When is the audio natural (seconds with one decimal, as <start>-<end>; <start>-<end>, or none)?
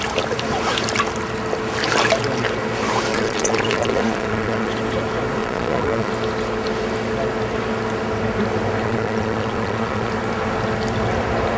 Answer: 0.0-3.1; 4.7-5.4; 6.1-8.8; 10.1-11.6